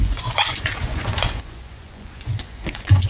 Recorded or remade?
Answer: remade